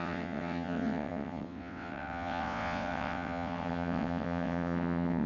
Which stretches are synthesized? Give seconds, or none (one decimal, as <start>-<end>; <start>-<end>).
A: 0.0-5.3